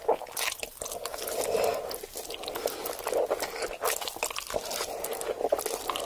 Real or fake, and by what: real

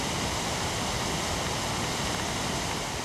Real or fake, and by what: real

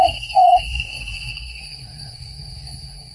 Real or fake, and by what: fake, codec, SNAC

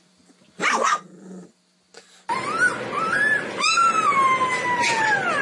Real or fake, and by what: real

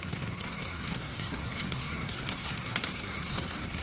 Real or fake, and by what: fake, codec, SNAC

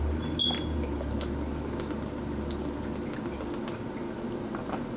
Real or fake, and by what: real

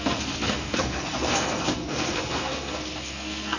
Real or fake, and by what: fake, codec, SNAC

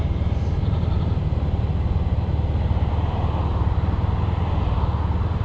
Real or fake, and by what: real